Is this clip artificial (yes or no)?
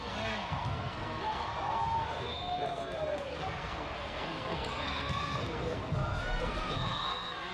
yes